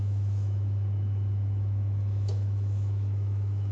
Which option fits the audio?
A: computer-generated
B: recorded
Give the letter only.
A